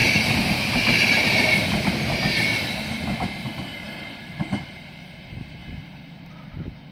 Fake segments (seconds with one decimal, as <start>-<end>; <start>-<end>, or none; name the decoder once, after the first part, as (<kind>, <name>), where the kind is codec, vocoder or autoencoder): 4.1-5.6 (vocoder, BigVGAN v2); 6.2-6.9